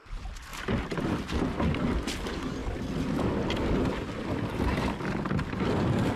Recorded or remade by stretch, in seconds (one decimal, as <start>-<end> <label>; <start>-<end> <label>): 0.0-6.2 recorded